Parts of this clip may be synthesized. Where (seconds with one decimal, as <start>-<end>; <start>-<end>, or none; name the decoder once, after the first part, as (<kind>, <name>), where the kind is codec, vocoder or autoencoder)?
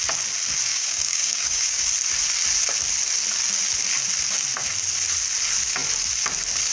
0.7-1.8 (codec, DAC)